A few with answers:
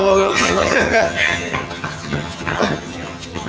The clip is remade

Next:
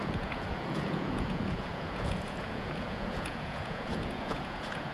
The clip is remade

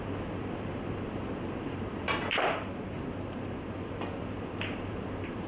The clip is remade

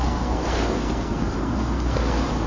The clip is remade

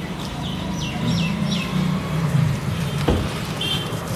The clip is remade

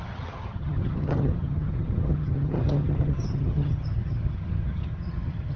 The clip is remade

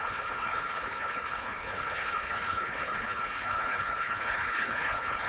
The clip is remade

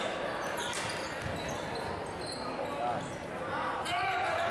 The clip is recorded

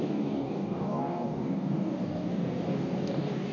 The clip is remade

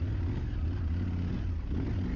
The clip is recorded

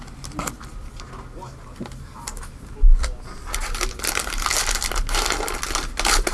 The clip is recorded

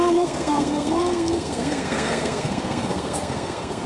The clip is remade